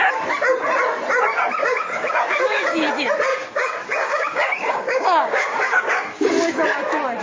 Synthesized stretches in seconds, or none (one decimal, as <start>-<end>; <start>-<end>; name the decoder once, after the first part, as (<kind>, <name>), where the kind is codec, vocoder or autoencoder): 1.6-2.9 (codec, DAC); 3.3-6.3